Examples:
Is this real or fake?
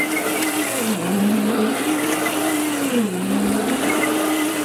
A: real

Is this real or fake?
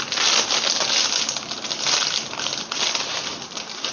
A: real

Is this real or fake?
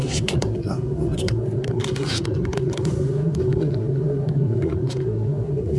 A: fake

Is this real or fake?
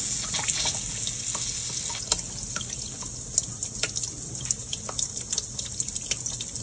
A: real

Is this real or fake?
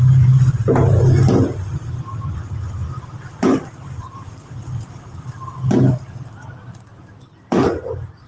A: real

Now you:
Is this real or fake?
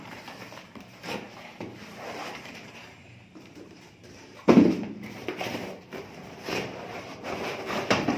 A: fake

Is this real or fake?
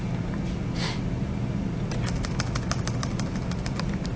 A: real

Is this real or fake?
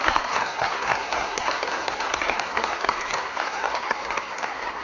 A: fake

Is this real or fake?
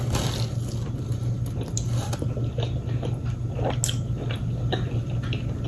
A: real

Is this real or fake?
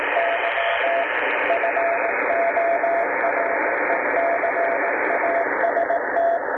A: real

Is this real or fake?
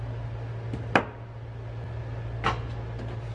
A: real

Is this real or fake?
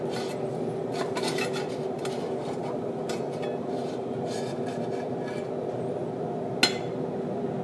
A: real